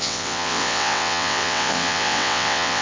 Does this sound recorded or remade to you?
remade